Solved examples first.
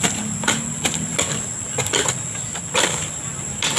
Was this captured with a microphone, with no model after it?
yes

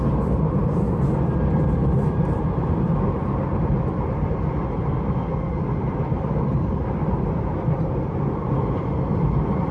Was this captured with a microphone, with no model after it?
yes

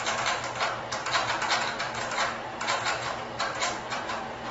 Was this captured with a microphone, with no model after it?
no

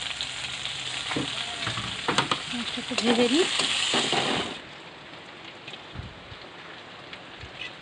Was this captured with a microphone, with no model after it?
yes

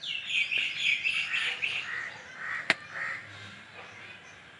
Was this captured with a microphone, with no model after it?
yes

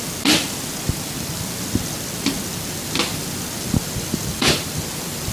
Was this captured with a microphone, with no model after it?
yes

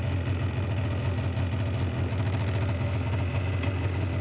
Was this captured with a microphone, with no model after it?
yes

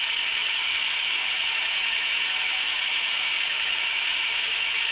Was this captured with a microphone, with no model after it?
no